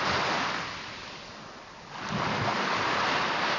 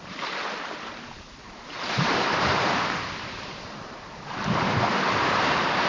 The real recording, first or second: first